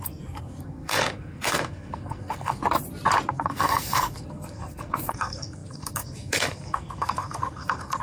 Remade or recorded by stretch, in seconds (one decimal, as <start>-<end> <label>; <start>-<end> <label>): 0.0-2.6 remade; 2.6-3.3 recorded; 3.3-8.0 remade